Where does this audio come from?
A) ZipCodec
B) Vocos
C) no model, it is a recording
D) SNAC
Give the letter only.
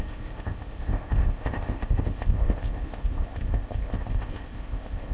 A